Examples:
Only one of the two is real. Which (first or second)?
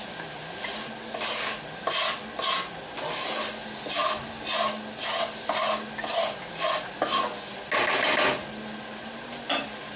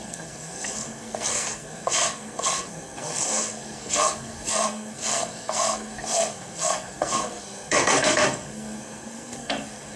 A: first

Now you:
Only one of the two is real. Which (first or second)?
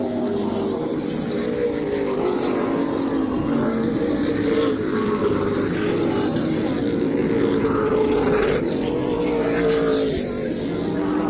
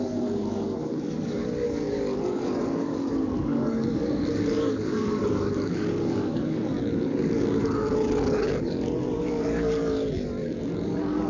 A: first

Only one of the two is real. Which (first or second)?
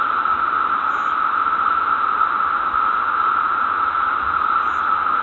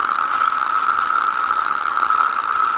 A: first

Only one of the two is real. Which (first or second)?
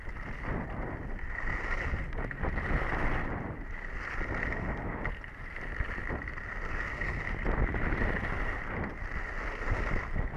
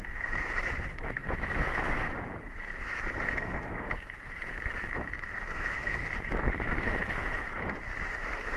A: first